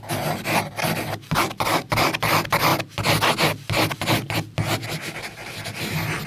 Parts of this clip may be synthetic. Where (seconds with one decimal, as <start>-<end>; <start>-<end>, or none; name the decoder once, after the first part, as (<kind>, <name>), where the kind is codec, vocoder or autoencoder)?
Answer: none